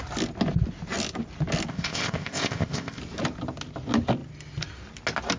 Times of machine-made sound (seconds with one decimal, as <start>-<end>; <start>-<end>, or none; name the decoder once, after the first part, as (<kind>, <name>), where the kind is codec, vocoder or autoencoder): 1.7-3.0 (codec, ZipCodec)